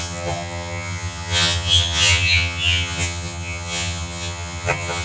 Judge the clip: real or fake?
fake